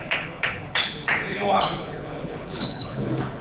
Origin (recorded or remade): remade